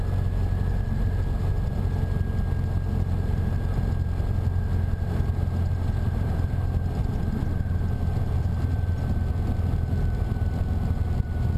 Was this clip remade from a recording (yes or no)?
no